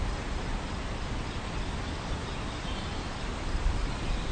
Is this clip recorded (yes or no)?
yes